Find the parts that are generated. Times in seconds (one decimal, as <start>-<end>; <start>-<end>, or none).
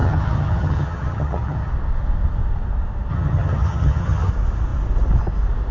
0.0-1.7; 3.1-4.3